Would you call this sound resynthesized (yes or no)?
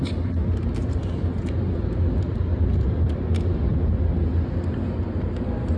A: no